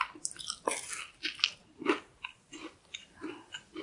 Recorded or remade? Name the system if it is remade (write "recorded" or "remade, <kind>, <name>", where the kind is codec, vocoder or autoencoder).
recorded